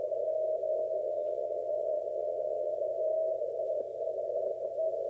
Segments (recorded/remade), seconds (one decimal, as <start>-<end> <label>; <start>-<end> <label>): 0.0-1.0 recorded; 1.0-2.8 remade; 2.8-5.1 recorded